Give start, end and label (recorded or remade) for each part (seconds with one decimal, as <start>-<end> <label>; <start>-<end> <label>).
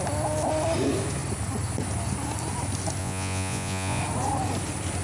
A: 0.0-3.0 recorded; 3.0-4.0 remade; 4.0-5.0 recorded